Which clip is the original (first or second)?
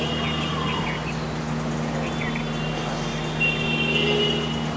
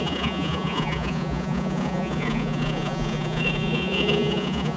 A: first